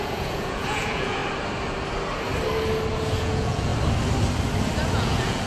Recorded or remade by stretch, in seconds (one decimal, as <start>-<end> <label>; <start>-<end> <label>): 0.0-1.2 remade; 1.2-3.2 recorded; 3.2-3.7 remade; 3.7-4.9 recorded; 4.9-5.5 remade

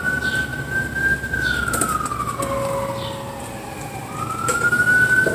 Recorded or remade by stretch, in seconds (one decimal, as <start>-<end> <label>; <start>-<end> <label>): 0.0-5.3 recorded

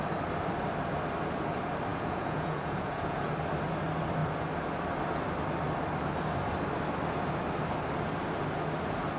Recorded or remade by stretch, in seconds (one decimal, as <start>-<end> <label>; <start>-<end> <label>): 0.0-1.9 recorded; 1.9-3.3 remade; 3.3-9.2 recorded

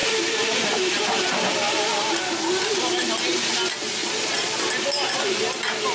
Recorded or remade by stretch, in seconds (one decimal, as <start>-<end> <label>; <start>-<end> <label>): 0.0-4.0 recorded; 4.0-4.6 remade; 4.6-5.9 recorded

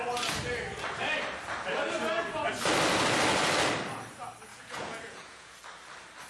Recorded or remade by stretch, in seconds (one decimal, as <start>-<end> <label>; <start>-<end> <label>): 0.0-4.5 recorded; 4.5-5.6 remade; 5.6-6.3 recorded

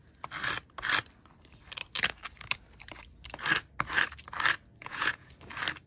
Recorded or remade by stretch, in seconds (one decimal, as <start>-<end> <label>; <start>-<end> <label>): 0.0-4.8 recorded; 4.8-5.3 remade; 5.3-5.9 recorded

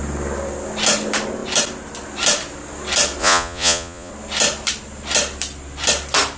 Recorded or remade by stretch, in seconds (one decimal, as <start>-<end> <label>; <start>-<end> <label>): 0.0-3.2 recorded; 3.2-4.1 remade; 4.1-6.4 recorded

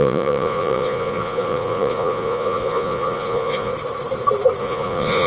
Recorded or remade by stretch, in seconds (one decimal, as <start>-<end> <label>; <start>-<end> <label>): 0.0-3.7 remade; 3.7-4.6 recorded; 4.6-5.3 remade